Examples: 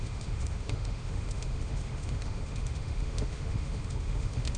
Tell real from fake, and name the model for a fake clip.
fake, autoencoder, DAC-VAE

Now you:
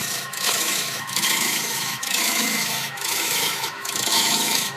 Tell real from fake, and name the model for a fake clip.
fake, autoencoder, DAC-VAE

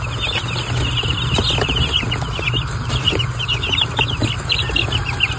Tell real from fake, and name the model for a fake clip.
real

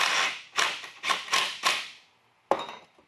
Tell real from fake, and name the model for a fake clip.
real